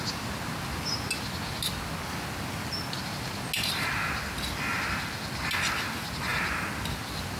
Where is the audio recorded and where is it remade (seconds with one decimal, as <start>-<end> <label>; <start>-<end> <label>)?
0.0-7.4 recorded